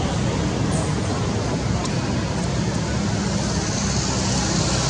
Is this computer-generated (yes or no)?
no